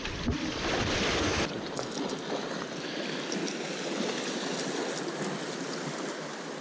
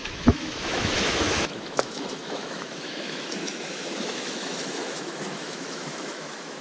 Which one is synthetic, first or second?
second